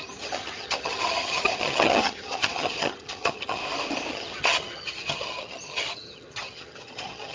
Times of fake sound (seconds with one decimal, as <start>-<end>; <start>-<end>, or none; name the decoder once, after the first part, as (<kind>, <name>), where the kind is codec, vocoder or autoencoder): 0.0-3.6 (vocoder, HiFi-GAN); 4.1-7.3